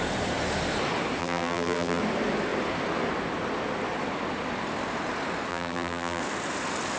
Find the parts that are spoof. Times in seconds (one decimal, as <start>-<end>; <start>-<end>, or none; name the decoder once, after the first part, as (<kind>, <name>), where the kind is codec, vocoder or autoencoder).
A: 1.2-2.0 (vocoder, BigVGAN v2); 5.5-6.2